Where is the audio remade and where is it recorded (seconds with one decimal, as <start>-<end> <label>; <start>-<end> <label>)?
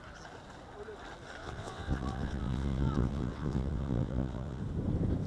0.0-1.4 recorded; 1.4-4.6 remade; 4.6-5.3 recorded